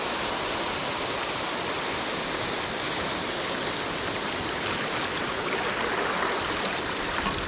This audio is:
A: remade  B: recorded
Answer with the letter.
B